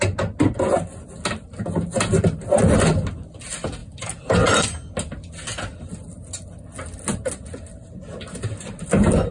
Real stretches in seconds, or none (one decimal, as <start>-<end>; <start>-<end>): 0.0-3.8; 4.9-9.3